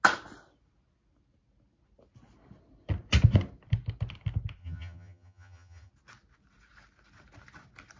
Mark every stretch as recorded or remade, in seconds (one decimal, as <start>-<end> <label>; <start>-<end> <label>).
0.0-4.6 recorded; 4.6-5.9 remade; 5.9-8.0 recorded